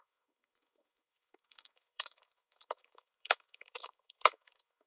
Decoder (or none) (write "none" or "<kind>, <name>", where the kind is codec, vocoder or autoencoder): autoencoder, DAC-VAE